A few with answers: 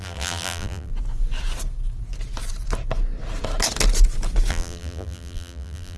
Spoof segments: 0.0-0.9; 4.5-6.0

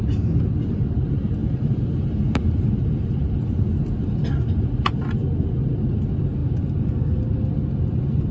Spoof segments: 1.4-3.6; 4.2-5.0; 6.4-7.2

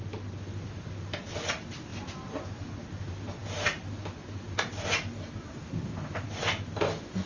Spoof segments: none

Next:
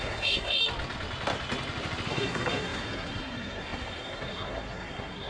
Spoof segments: 0.0-0.6; 2.1-5.3